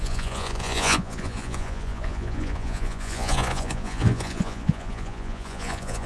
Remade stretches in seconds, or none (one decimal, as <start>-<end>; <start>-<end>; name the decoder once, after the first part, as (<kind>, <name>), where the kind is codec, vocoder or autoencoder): 0.0-6.1 (vocoder, Vocos)